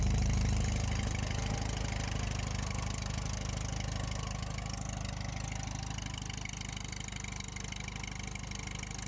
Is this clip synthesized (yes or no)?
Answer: no